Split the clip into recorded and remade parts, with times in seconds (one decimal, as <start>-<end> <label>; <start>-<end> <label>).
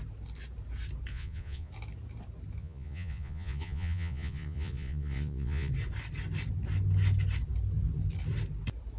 0.0-1.1 recorded; 1.1-1.7 remade; 1.7-2.6 recorded; 2.6-5.7 remade; 5.7-9.0 recorded